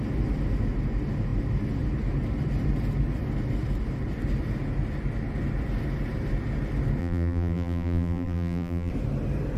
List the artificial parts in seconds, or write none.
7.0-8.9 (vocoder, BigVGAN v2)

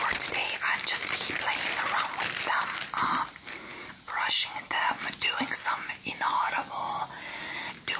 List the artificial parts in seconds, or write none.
none

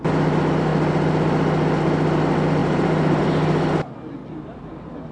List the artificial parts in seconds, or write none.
2.6-3.2 (vocoder, BigVGAN v2); 4.2-5.1

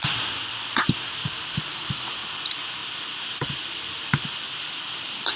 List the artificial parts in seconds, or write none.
1.2-2.2 (vocoder, BigVGAN v2)

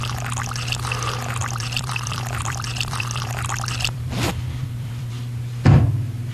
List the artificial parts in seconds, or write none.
1.4-4.1 (vocoder, BigVGAN v2); 4.6-5.1

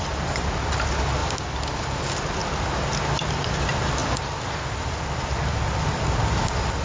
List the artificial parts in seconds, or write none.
1.2-2.0 (vocoder, BigVGAN v2); 4.0-5.0

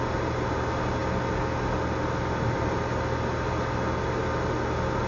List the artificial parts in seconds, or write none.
none

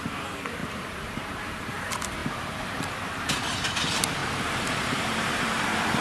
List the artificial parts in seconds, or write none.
0.6-1.6 (vocoder, BigVGAN v2); 2.2-3.3; 4.2-5.4